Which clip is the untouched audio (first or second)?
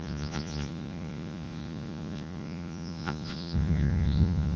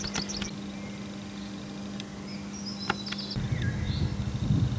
second